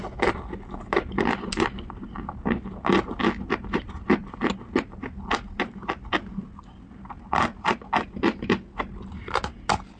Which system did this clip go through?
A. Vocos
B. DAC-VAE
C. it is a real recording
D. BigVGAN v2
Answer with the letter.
C